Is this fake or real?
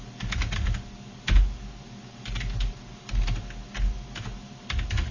real